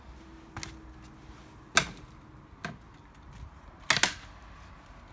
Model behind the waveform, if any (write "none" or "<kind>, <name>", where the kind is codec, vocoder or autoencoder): none